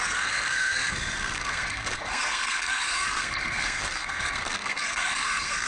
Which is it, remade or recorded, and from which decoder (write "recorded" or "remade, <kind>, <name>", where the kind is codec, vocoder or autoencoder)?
remade, codec, SNAC